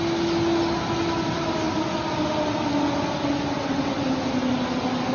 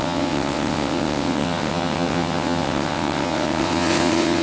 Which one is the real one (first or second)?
first